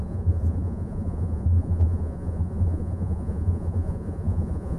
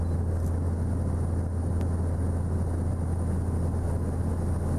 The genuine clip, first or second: second